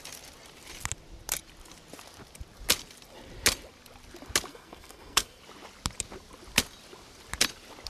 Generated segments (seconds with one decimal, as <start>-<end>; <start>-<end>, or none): 4.5-5.4